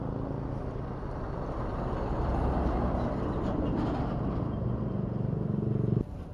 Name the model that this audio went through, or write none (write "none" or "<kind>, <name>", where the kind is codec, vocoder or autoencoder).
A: none